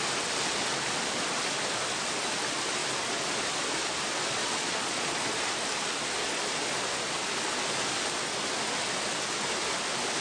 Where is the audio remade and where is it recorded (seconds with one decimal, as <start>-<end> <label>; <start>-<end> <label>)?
0.0-4.4 recorded; 4.4-5.2 remade; 5.2-10.2 recorded